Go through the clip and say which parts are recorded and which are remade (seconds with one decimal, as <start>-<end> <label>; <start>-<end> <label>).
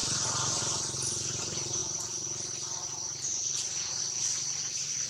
0.0-0.6 remade; 0.6-1.8 recorded; 1.8-4.0 remade; 4.0-5.1 recorded